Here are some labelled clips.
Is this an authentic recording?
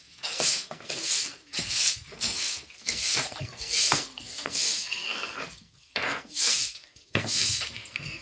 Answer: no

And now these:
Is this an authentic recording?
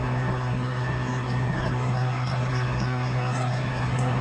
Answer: no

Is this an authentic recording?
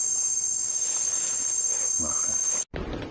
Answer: yes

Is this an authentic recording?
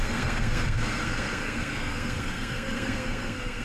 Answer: no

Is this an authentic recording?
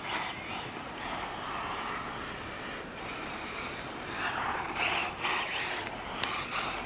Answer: yes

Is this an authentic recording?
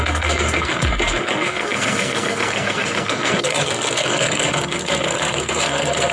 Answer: no